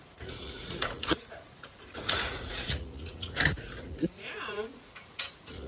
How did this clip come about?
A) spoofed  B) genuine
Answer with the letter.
A